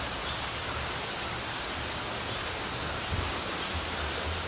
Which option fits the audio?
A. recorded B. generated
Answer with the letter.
A